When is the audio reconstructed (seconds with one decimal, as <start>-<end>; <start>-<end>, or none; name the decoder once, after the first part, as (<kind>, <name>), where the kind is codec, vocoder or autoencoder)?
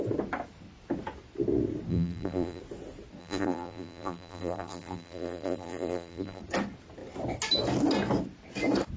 1.9-2.6 (vocoder, BigVGAN v2); 3.2-6.4